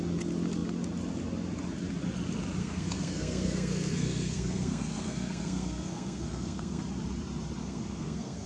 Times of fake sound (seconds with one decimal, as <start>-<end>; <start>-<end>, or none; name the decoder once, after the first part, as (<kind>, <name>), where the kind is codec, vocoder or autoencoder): 2.6-6.8 (codec, SNAC); 7.6-8.5

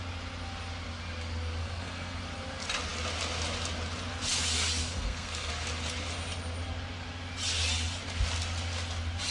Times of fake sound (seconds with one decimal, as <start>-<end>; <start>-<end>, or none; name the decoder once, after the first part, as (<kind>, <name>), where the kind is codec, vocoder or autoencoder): 1.6-2.2 (codec, SNAC); 4.8-5.5

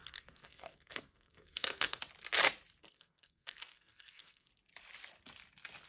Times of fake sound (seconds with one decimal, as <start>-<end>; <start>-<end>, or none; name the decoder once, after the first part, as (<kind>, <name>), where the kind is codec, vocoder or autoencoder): 0.0-2.0 (codec, SNAC); 2.8-4.5